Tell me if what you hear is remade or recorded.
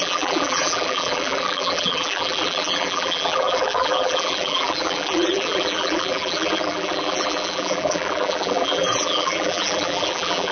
remade